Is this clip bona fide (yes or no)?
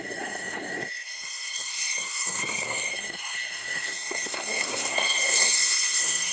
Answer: no